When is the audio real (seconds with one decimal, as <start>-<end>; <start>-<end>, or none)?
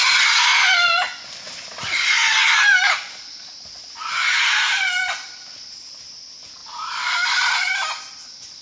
0.0-8.6